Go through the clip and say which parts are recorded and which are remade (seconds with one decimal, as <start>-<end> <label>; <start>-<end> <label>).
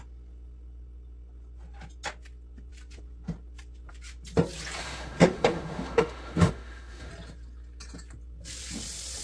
0.0-4.8 recorded; 4.8-7.1 remade; 7.1-9.2 recorded